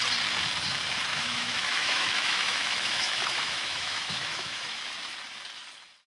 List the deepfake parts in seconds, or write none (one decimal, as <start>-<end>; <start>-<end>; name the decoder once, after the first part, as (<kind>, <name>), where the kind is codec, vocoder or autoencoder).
1.1-4.8 (autoencoder, DAC-VAE)